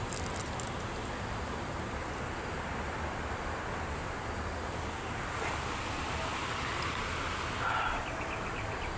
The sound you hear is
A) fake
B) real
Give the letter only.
B